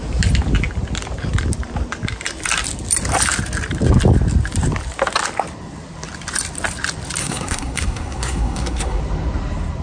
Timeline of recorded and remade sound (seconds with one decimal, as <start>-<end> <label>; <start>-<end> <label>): 0.0-7.2 recorded; 7.2-9.0 remade; 9.0-9.8 recorded